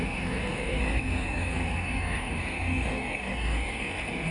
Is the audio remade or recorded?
remade